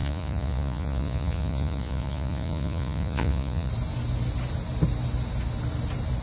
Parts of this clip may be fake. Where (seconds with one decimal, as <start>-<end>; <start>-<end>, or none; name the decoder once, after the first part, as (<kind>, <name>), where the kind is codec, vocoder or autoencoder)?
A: 0.0-3.7 (vocoder, Vocos)

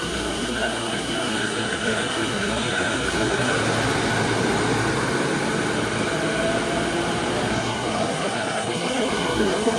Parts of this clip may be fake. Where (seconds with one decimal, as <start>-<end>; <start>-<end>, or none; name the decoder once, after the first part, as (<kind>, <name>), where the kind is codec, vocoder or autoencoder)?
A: 0.0-3.5 (codec, SNAC); 7.5-9.8